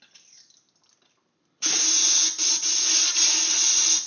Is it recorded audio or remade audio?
recorded